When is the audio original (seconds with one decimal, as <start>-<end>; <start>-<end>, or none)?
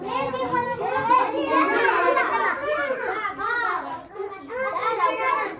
0.0-5.6